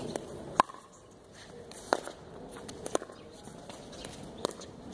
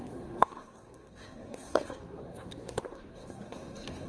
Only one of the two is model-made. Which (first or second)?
second